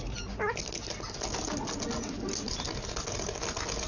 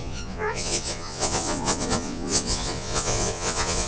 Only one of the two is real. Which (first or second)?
first